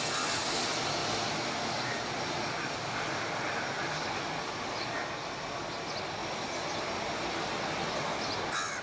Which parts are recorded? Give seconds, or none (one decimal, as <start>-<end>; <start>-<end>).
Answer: 0.0-8.8